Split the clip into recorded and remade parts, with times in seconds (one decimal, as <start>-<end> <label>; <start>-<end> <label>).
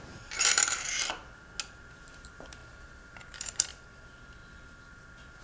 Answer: 0.0-1.2 remade; 1.2-1.9 recorded; 1.9-3.7 remade; 3.7-5.4 recorded